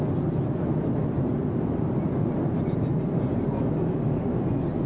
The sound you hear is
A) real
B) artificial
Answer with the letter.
A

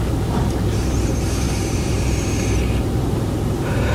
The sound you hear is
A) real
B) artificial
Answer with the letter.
B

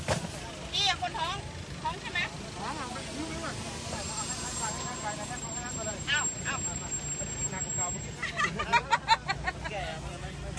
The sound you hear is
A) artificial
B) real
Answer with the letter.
B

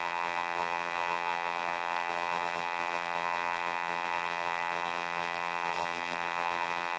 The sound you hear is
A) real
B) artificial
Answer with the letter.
B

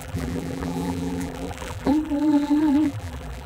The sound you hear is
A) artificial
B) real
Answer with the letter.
A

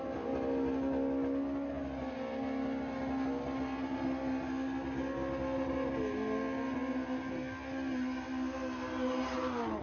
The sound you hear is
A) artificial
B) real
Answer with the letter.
B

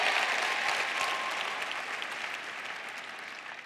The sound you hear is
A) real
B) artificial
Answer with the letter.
A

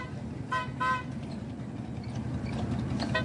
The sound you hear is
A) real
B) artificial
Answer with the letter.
A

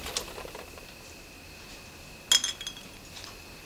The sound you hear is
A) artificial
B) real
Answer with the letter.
B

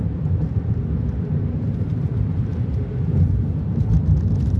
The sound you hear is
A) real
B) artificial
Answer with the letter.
B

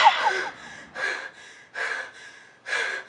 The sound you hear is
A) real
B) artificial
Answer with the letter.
B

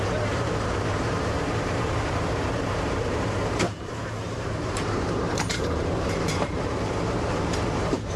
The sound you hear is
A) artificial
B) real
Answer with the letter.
A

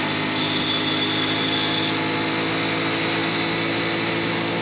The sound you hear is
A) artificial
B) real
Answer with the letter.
B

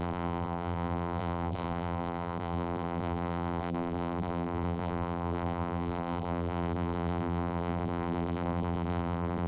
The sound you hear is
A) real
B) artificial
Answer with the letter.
B